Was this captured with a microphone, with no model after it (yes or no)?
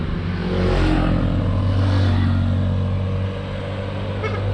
yes